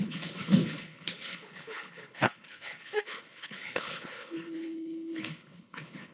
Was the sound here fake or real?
fake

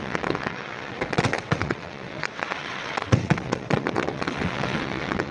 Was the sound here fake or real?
fake